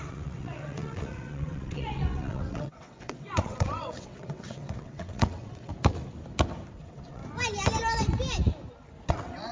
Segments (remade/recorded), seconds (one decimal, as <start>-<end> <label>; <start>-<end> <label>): 0.0-5.7 remade; 5.7-6.7 recorded; 6.7-7.2 remade; 7.2-9.1 recorded; 9.1-9.5 remade